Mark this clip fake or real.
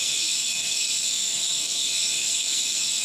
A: fake